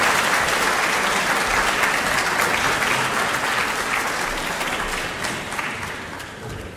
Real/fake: real